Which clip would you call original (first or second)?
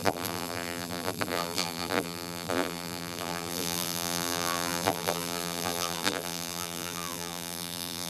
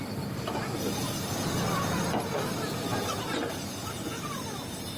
second